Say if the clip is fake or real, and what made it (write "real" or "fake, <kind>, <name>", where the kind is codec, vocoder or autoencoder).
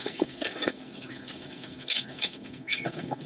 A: fake, codec, SNAC